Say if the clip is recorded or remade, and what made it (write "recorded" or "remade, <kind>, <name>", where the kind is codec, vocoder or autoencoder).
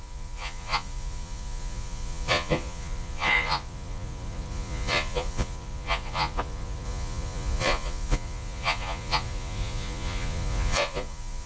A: remade, vocoder, Vocos